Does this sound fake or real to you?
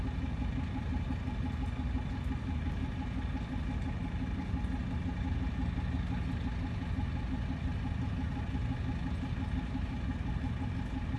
real